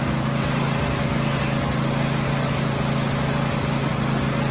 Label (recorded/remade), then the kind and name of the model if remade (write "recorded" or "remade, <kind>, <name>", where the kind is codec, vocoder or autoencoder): recorded